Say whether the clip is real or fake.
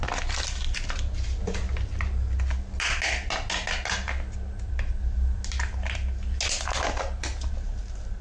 real